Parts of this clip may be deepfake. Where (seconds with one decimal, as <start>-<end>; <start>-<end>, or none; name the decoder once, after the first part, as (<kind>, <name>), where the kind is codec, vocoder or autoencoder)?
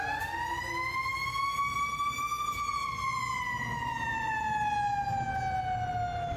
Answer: none